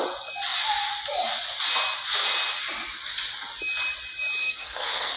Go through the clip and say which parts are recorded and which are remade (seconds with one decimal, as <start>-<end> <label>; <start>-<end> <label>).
0.0-4.4 recorded; 4.4-5.2 remade